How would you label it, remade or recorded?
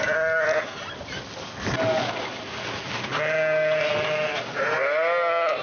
recorded